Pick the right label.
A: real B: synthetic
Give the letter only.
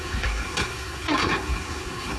B